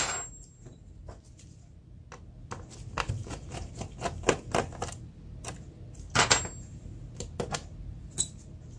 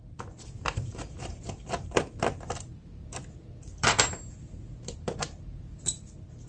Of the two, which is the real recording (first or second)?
first